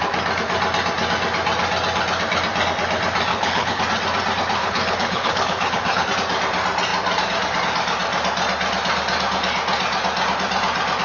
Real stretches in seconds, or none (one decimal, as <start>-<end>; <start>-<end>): 0.0-3.3; 3.8-4.6; 6.1-11.0